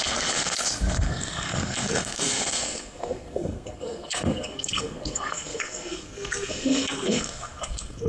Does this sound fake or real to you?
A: fake